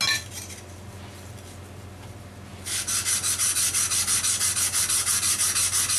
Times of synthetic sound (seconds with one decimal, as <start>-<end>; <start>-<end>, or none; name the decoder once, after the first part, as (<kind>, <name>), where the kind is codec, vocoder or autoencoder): none